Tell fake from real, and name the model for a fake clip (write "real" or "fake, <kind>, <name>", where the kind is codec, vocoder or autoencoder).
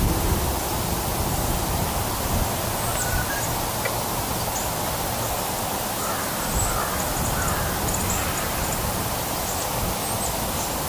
real